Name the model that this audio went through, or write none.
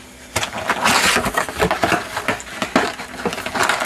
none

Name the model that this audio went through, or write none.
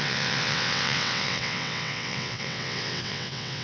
vocoder, WaveNeXt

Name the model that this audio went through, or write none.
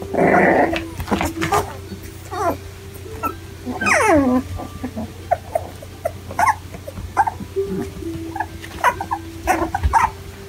none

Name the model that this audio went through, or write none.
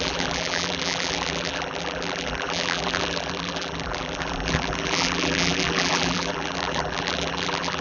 vocoder, BigVGAN v2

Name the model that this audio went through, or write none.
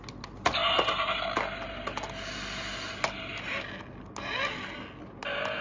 none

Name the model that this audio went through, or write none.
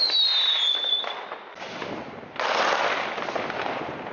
none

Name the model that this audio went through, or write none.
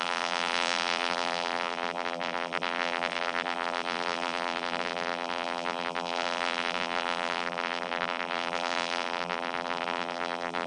vocoder, BigVGAN v2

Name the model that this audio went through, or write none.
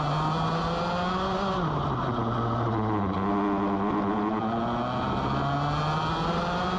none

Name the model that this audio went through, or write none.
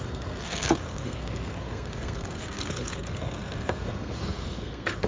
codec, SNAC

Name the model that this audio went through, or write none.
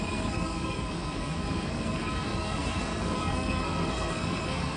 codec, SNAC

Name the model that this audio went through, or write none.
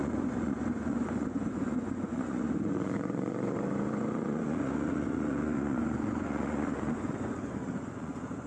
vocoder, Vocos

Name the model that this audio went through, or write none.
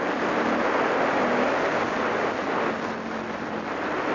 none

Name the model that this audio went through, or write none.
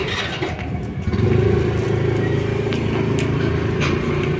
none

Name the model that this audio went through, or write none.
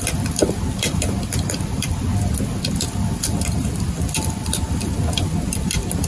vocoder, BigVGAN v2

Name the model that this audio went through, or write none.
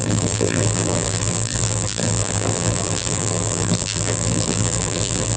vocoder, BigVGAN v2